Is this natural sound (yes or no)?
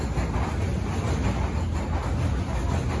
yes